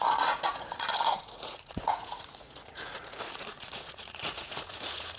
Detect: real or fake fake